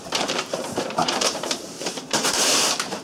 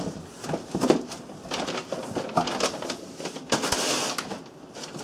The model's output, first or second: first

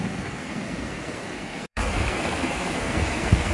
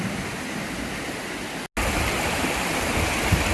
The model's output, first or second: first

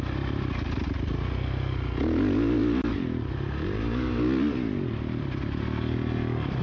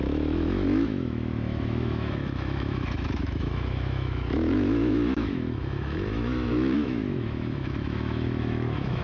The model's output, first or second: second